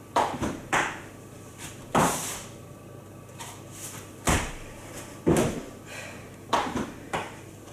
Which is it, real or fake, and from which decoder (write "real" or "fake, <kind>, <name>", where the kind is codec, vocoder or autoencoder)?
fake, vocoder, BigVGAN v2